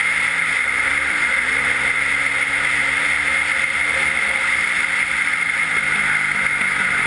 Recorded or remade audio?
recorded